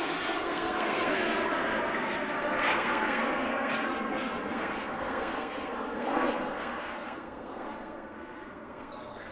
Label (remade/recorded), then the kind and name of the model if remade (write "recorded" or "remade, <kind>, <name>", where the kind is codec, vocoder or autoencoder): remade, codec, SNAC